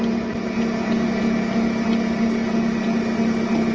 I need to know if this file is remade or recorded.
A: recorded